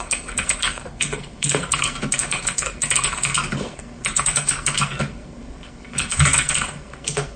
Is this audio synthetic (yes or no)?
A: yes